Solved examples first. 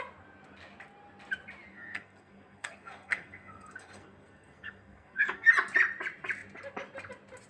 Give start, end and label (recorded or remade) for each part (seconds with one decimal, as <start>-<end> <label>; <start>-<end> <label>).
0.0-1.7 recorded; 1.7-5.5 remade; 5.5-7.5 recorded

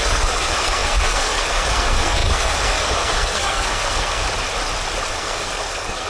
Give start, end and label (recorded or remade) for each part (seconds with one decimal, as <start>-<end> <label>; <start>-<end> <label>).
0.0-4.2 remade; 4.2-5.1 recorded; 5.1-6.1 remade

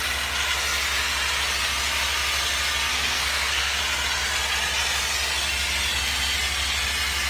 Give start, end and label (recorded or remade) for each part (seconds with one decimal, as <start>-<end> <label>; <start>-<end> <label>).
0.0-2.9 recorded; 2.9-3.8 remade; 3.8-7.3 recorded

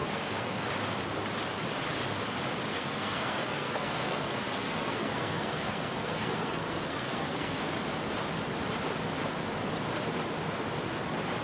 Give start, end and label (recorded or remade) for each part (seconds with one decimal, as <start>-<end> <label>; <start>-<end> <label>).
0.0-0.7 remade; 0.7-2.7 recorded; 2.7-7.7 remade; 7.7-11.4 recorded

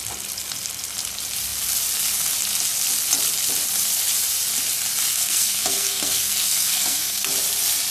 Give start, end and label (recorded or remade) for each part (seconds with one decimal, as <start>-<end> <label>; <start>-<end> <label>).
0.0-5.1 recorded; 5.1-7.3 remade; 7.3-7.9 recorded